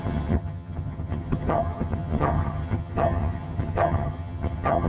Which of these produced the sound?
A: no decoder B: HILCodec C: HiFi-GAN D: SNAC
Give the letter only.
C